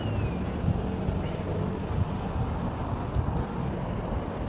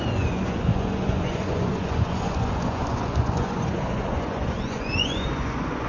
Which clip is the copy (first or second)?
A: second